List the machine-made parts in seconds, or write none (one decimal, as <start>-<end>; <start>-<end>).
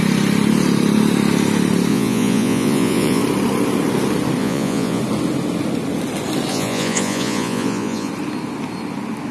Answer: 1.9-3.2; 4.4-5.0; 6.5-8.1